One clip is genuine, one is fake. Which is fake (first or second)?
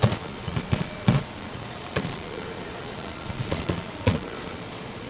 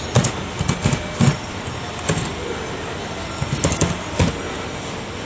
first